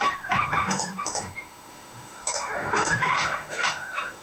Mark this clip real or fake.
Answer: fake